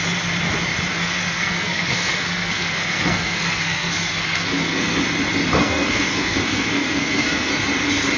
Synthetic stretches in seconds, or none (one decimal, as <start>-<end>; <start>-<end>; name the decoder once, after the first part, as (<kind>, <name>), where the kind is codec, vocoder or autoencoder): 0.9-5.0 (codec, SNAC); 5.6-7.5